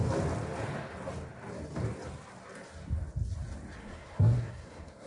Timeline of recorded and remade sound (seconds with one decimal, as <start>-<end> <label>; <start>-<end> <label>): 0.0-3.8 recorded; 3.8-5.1 remade